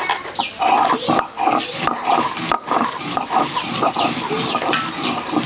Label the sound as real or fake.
real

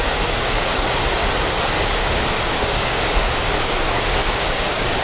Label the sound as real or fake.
fake